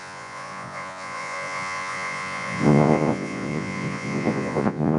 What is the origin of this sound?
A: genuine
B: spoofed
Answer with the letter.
B